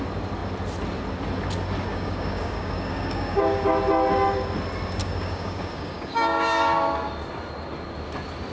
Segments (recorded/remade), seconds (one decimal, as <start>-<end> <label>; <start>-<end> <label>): 0.0-1.9 recorded; 1.9-3.7 remade; 3.7-5.0 recorded; 5.0-7.1 remade; 7.1-8.5 recorded